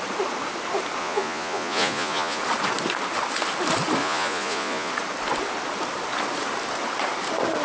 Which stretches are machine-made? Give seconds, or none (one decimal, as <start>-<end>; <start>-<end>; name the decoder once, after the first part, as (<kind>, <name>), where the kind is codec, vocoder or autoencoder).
1.0-2.4 (vocoder, Vocos); 4.0-4.9